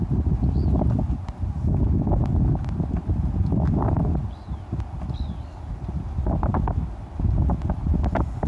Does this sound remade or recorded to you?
recorded